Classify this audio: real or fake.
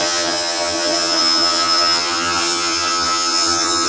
fake